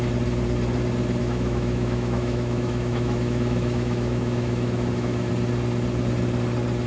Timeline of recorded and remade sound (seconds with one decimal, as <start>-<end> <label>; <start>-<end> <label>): 0.0-1.2 recorded; 1.2-5.3 remade; 5.3-6.9 recorded